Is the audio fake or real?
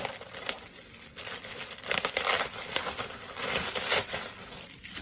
real